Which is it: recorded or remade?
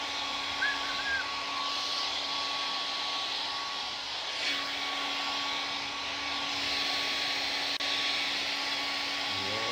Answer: recorded